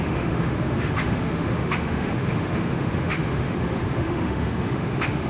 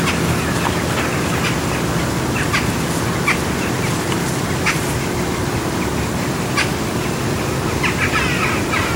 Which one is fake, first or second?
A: first